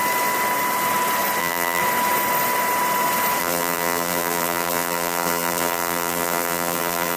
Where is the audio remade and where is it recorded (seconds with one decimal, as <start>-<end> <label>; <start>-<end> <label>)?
0.0-1.4 recorded; 1.4-1.8 remade; 1.8-3.4 recorded; 3.4-7.2 remade